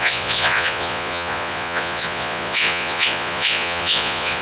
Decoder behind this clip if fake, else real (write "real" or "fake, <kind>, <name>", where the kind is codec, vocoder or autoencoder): fake, vocoder, Vocos